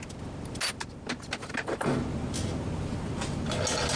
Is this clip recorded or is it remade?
recorded